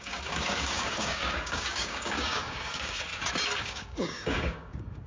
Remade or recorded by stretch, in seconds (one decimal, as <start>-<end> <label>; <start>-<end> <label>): 0.0-3.1 remade; 3.1-3.6 recorded; 3.6-5.1 remade